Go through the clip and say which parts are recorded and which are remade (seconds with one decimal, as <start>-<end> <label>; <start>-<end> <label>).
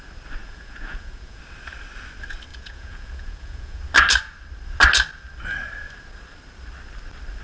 0.0-0.4 recorded; 0.4-1.4 remade; 1.4-2.5 recorded; 2.5-3.8 remade; 3.8-7.4 recorded